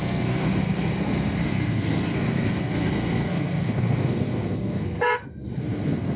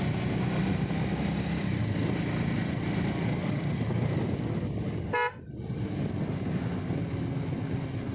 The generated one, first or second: first